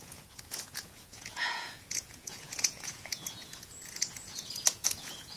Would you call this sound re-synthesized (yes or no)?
yes